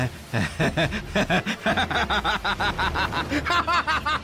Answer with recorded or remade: recorded